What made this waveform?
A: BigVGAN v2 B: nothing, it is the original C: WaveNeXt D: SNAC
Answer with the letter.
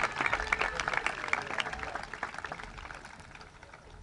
B